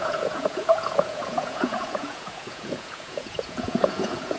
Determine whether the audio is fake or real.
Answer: fake